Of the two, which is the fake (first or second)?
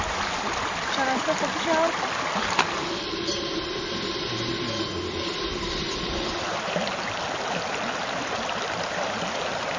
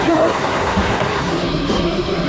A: second